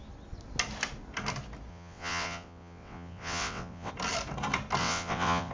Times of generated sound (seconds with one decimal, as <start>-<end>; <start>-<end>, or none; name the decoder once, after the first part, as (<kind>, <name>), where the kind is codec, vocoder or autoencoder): 1.7-3.9 (vocoder, WaveNeXt); 4.8-5.5